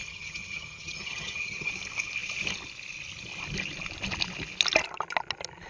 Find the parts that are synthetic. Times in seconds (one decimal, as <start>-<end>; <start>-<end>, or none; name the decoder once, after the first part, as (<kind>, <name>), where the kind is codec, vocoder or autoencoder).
0.0-1.7 (vocoder, HiFi-GAN)